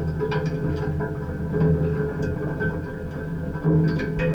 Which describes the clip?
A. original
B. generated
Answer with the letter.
A